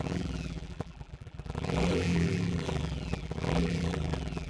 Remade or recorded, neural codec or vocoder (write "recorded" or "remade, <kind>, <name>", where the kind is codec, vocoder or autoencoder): remade, vocoder, BigVGAN v2